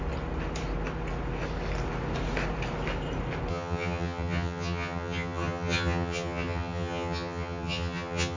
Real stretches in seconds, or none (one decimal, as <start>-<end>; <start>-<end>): 0.0-3.5